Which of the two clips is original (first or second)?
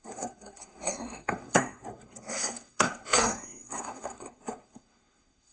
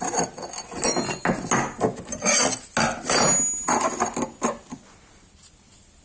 second